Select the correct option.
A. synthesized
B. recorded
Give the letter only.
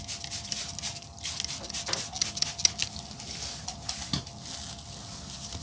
B